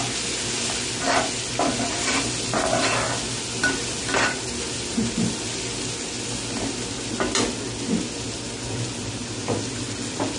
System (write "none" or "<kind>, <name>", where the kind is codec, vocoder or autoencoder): none